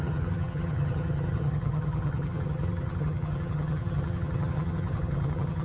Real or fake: fake